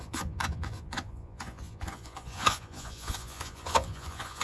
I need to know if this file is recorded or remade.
remade